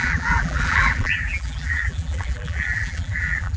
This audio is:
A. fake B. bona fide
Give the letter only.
A